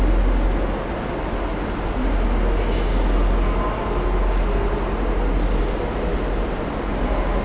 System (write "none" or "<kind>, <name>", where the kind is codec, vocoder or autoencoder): none